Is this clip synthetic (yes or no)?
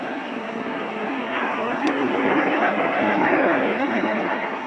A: yes